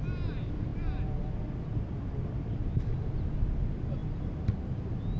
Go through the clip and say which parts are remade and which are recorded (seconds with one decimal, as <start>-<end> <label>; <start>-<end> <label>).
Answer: 0.0-5.2 recorded